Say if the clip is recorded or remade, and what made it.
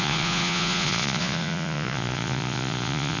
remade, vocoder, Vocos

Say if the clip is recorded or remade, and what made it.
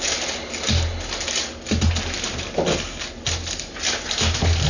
recorded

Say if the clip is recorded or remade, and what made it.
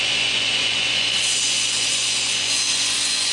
remade, vocoder, Vocos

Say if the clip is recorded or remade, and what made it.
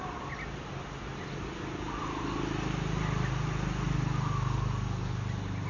recorded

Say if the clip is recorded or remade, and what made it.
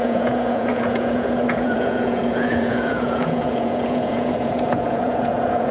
remade, vocoder, Vocos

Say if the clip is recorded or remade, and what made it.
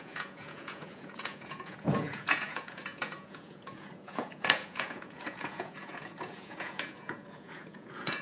remade, vocoder, Vocos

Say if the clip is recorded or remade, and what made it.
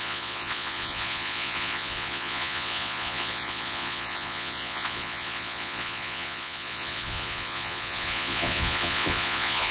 remade, vocoder, Vocos